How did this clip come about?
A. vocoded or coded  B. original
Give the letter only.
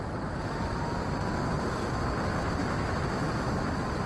B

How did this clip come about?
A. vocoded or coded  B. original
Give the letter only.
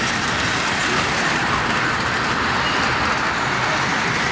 B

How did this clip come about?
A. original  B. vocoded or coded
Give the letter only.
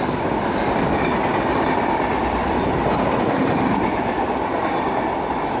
A